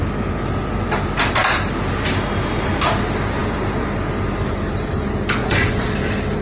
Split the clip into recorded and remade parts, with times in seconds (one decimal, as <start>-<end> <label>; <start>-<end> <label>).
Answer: 0.0-5.4 recorded; 5.4-5.9 remade; 5.9-6.4 recorded